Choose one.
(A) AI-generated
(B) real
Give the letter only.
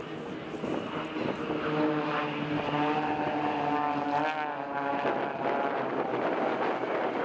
B